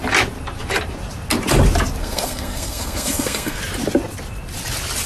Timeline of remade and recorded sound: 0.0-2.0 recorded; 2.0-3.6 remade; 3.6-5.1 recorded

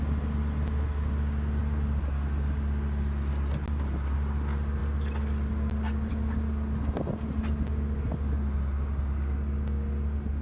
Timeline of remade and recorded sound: 0.0-10.4 recorded

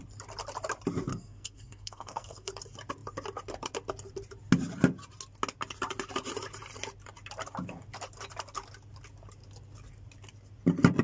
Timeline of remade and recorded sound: 0.0-1.1 recorded; 1.1-2.5 remade; 2.5-11.0 recorded

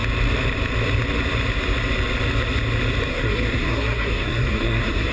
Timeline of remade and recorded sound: 0.0-3.1 recorded; 3.1-5.1 remade

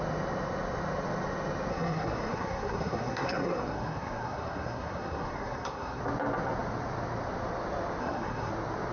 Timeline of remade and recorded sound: 0.0-1.7 recorded; 1.7-6.0 remade; 6.0-8.0 recorded; 8.0-8.5 remade; 8.5-8.9 recorded

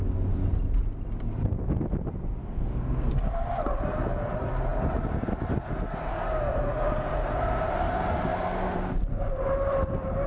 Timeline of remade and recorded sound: 0.0-2.4 recorded; 2.4-3.1 remade; 3.1-10.3 recorded

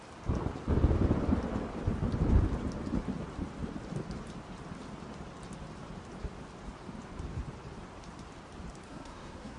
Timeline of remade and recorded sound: 0.0-8.9 recorded; 8.9-9.6 remade